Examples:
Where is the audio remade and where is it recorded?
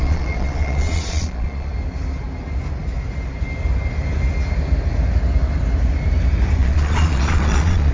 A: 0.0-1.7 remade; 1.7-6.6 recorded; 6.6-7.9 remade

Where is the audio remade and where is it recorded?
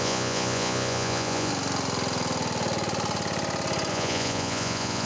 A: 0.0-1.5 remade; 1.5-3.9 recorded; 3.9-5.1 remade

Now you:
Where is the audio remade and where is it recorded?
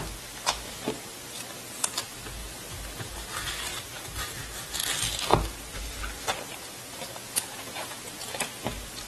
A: 0.0-7.1 recorded; 7.1-8.1 remade; 8.1-9.1 recorded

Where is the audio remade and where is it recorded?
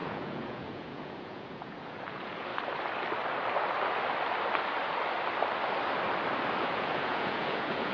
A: 0.0-2.5 remade; 2.5-6.6 recorded; 6.6-7.9 remade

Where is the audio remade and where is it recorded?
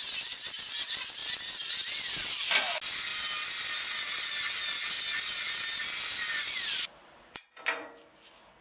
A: 0.0-8.6 recorded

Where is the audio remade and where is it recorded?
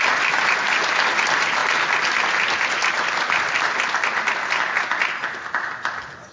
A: 0.0-6.3 recorded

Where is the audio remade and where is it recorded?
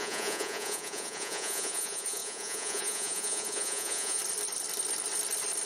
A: 0.0-4.2 remade; 4.2-5.7 recorded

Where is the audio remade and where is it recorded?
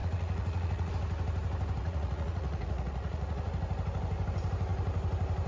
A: 0.0-0.9 remade; 0.9-1.8 recorded; 1.8-3.5 remade; 3.5-5.5 recorded